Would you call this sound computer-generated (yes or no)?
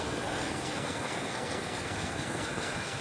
yes